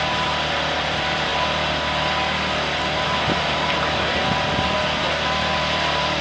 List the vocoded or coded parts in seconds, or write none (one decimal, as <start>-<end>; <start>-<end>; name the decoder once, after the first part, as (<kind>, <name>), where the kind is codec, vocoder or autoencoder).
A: 0.0-1.3 (vocoder, BigVGAN v2); 5.0-6.2